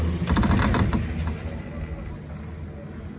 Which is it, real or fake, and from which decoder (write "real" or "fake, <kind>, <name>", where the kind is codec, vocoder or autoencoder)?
real